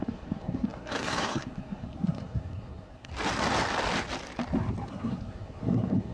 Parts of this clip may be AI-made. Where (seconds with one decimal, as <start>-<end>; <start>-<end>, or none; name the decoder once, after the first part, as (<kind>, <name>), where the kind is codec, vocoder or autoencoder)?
0.0-3.1 (codec, SNAC); 4.9-6.1